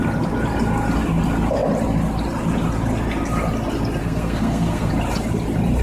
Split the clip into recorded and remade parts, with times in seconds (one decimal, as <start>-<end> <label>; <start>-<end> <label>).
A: 0.0-4.0 recorded; 4.0-4.9 remade; 4.9-5.8 recorded